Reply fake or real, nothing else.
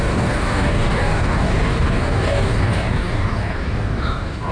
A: fake